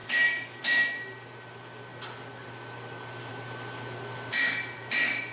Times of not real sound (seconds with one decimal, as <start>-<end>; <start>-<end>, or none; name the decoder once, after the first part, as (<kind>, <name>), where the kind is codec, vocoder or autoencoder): 0.0-0.6 (codec, DAC)